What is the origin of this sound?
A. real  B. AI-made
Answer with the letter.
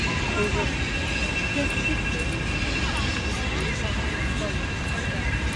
A